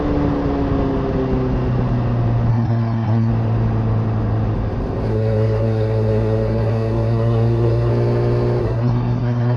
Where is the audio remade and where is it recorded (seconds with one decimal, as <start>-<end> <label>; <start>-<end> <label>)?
0.0-2.5 recorded; 2.5-3.3 remade; 3.3-5.1 recorded; 5.1-7.9 remade; 7.9-8.6 recorded; 8.6-9.6 remade